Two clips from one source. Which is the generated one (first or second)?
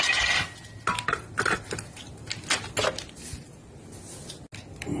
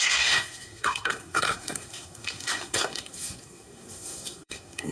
second